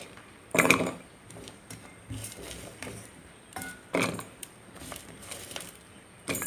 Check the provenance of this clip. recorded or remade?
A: remade